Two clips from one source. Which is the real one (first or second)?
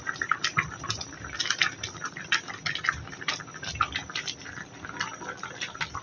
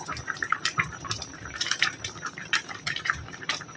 first